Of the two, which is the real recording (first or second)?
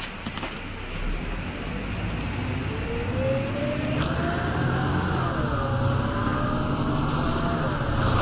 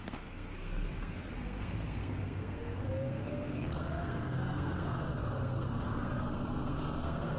first